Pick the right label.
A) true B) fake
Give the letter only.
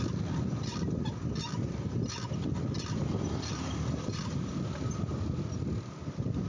A